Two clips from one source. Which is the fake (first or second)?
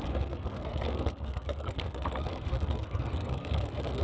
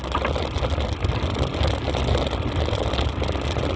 first